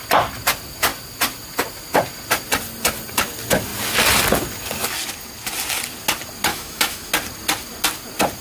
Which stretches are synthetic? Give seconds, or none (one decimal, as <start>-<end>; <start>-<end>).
6.5-7.1